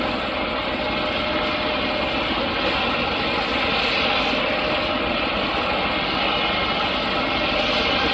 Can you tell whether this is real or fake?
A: real